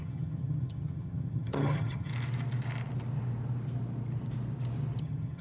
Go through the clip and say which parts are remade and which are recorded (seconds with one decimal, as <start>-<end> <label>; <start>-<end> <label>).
0.0-2.1 remade; 2.1-5.0 recorded; 5.0-5.4 remade